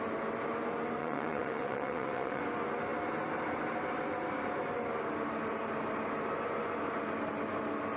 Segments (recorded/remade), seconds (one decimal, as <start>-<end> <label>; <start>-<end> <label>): 0.0-1.0 recorded; 1.0-2.4 remade; 2.4-8.0 recorded